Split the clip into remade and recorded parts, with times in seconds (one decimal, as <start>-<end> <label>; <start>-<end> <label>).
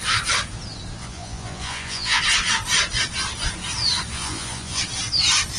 0.0-1.0 recorded; 1.0-2.2 remade; 2.2-4.1 recorded; 4.1-4.8 remade; 4.8-5.6 recorded